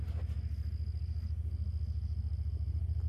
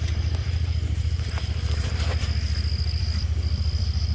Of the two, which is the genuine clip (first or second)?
first